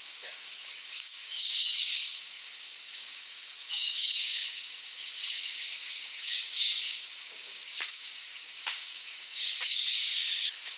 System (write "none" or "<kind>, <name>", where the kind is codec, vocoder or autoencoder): codec, DAC